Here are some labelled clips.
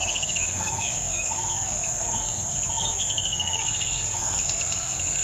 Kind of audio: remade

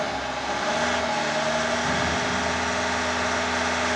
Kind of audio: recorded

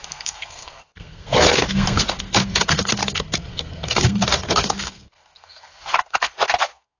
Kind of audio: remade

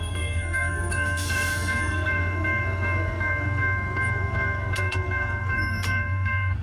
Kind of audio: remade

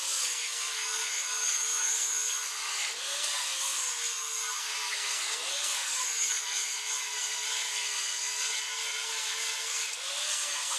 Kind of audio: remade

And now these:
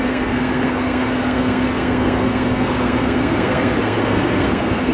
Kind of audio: remade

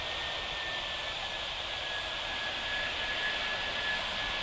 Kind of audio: recorded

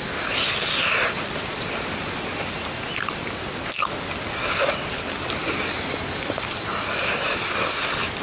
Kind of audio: recorded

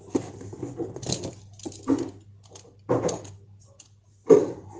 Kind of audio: recorded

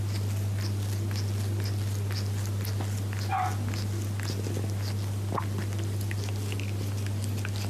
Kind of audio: recorded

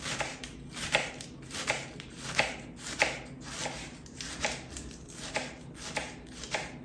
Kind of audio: recorded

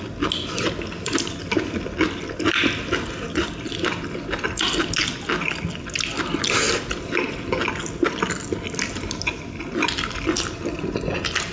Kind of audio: recorded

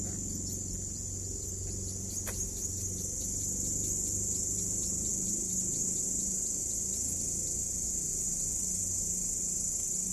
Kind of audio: recorded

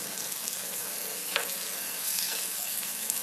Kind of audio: remade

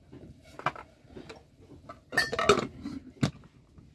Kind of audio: recorded